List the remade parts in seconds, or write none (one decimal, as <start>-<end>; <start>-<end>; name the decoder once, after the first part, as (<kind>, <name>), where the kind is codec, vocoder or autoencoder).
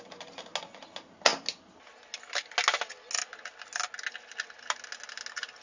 none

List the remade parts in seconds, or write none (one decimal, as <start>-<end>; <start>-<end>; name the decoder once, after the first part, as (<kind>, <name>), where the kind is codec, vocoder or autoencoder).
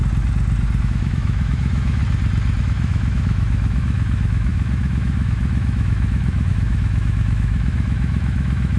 0.8-2.0 (autoencoder, DAC-VAE); 2.6-8.8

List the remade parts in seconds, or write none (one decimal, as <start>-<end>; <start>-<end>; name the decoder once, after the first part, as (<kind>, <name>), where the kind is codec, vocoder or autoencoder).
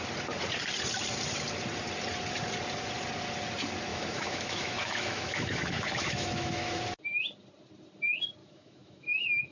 3.9-6.8 (autoencoder, DAC-VAE); 8.4-9.5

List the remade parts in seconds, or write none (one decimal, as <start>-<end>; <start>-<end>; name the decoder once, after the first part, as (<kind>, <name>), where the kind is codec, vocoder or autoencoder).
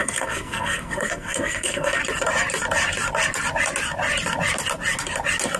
0.0-2.0 (codec, SNAC)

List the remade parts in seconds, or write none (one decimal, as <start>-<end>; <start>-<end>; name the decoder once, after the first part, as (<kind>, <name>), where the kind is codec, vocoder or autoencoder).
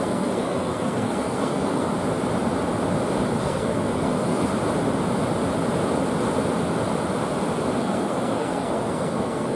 0.0-1.9 (codec, SNAC); 3.4-4.5; 7.8-9.6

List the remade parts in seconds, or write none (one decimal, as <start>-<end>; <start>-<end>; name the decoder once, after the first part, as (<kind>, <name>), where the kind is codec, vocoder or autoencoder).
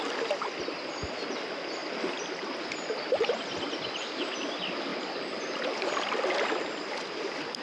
none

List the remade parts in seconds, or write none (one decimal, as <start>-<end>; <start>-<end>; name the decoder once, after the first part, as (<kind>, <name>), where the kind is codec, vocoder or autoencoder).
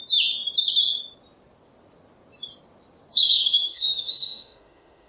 3.1-5.1 (autoencoder, DAC-VAE)